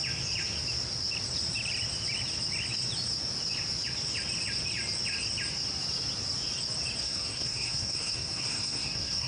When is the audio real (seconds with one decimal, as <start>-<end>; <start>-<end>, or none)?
0.0-7.0